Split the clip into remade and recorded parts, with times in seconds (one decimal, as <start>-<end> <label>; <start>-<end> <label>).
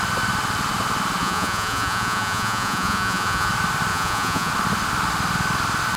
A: 0.0-1.2 recorded; 1.2-3.5 remade; 3.5-3.9 recorded; 3.9-4.5 remade; 4.5-6.0 recorded